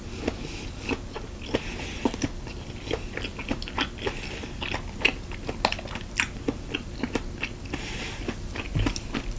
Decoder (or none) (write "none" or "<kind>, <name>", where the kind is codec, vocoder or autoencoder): none